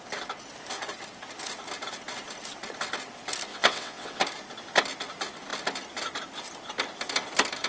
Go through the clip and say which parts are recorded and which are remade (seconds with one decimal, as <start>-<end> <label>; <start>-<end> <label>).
0.0-3.5 recorded; 3.5-4.2 remade; 4.2-7.7 recorded